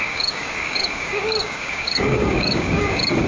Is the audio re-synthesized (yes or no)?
yes